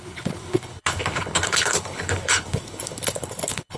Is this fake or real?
fake